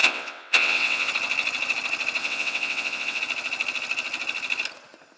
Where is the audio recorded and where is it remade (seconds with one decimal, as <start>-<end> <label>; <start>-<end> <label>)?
0.0-1.1 remade; 1.1-2.2 recorded; 2.2-3.2 remade; 3.2-5.2 recorded